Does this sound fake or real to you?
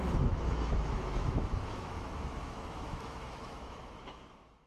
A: fake